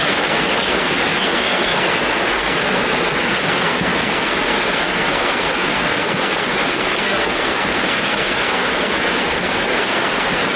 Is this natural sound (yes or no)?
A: no